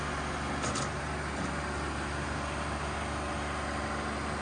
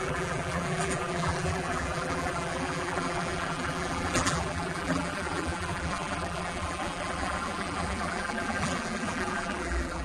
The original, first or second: first